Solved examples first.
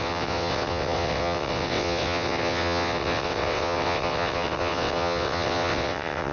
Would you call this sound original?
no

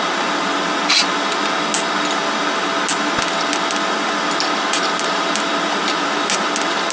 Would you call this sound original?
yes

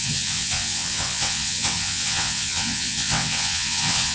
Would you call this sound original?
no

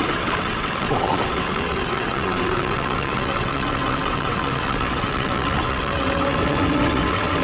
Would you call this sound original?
no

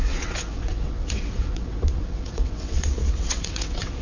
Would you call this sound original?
no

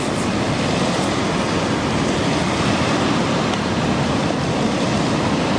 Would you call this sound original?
yes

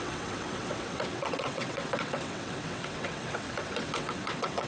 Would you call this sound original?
no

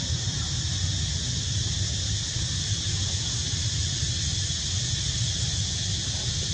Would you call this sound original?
yes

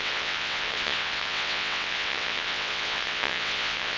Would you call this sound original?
no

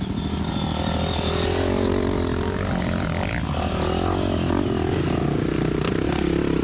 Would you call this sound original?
yes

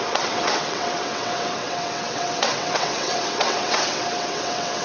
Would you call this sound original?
no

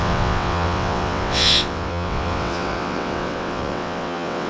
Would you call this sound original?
no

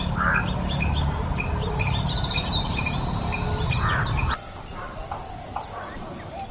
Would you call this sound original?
yes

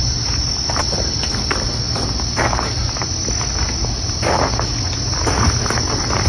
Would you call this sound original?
yes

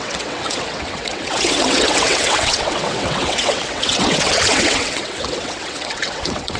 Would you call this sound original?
no